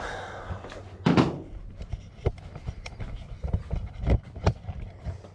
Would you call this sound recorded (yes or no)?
yes